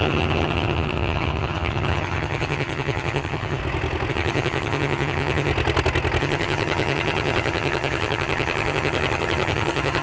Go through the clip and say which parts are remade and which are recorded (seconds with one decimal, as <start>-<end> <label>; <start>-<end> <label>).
0.0-3.6 remade; 3.6-4.1 recorded; 4.1-5.5 remade; 5.5-6.2 recorded; 6.2-10.0 remade